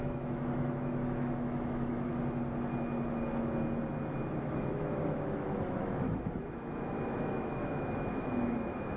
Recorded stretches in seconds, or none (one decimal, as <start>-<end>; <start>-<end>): 2.1-4.4